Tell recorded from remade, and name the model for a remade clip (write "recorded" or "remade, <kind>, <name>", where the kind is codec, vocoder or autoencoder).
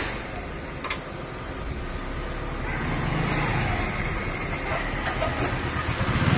recorded